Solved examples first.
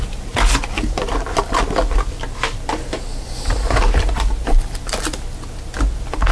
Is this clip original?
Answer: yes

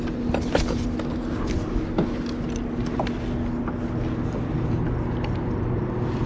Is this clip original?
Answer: yes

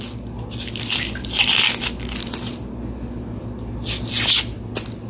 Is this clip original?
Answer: yes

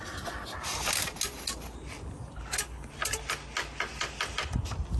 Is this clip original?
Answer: yes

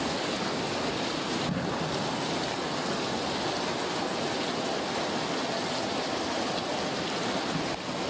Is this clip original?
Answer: yes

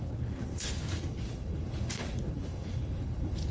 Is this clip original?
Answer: no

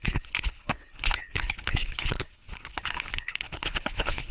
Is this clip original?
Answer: no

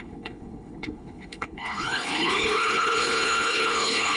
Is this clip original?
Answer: no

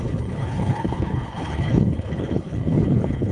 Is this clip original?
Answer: no